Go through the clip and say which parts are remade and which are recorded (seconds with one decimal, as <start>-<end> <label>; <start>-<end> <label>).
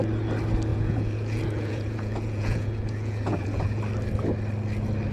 0.0-0.7 recorded; 0.7-3.8 remade; 3.8-5.1 recorded